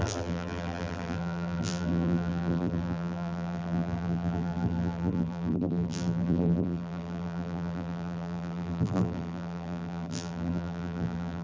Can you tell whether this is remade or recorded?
remade